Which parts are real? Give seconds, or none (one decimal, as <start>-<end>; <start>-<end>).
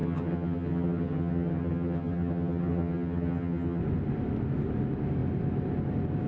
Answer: 3.8-6.3